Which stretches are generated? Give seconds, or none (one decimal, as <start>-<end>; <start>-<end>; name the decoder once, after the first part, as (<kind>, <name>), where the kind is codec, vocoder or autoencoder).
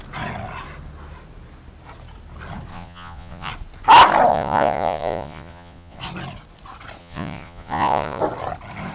2.7-3.5 (vocoder, Vocos); 4.3-6.0; 7.0-8.2